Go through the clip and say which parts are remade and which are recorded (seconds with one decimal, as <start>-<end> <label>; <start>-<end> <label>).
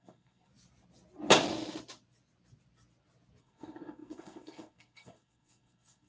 0.0-0.5 remade; 0.5-3.4 recorded; 3.4-6.1 remade